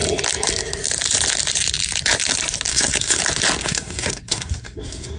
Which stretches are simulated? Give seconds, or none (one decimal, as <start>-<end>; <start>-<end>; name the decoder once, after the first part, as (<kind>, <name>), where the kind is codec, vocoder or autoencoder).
2.7-3.2 (codec, SNAC); 3.6-5.2

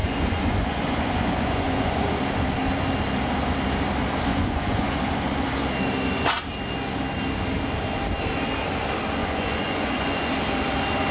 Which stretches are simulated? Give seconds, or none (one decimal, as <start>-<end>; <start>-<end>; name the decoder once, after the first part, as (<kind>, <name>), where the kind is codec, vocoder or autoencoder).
0.0-2.2 (vocoder, Vocos); 4.3-5.0; 9.2-10.3